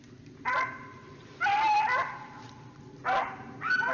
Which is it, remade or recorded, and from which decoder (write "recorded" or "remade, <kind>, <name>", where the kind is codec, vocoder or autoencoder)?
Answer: recorded